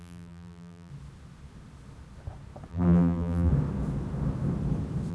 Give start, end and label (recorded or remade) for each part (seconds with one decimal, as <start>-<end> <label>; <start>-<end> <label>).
0.0-0.9 remade; 0.9-2.7 recorded; 2.7-3.5 remade; 3.5-5.1 recorded